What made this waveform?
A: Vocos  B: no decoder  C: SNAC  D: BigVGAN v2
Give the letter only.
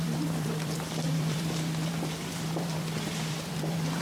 D